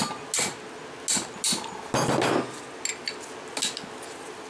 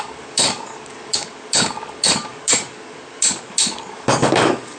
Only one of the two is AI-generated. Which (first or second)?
second